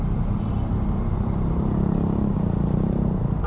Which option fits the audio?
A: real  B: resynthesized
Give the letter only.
A